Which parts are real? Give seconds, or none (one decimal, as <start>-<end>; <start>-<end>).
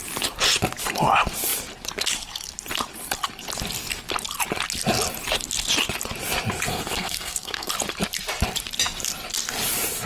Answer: 0.0-6.7; 7.7-10.1